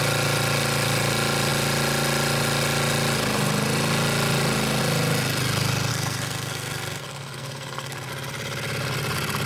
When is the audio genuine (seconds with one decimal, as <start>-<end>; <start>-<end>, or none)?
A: 0.0-5.9; 8.1-9.5